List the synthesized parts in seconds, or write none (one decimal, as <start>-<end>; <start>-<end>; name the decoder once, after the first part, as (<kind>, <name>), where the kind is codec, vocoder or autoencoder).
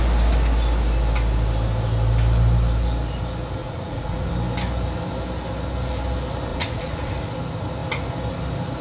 3.6-4.3 (vocoder, Vocos); 6.5-7.2